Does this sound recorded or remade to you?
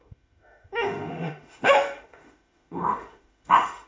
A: remade